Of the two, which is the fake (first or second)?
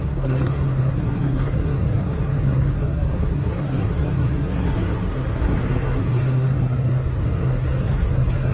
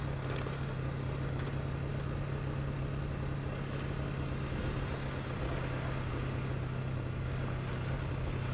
first